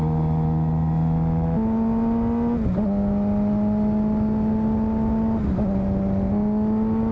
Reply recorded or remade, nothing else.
recorded